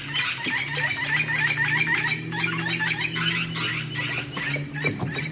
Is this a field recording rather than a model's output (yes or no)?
yes